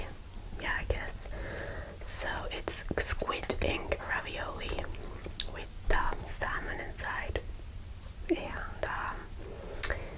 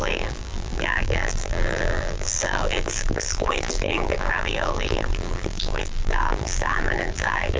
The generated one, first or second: second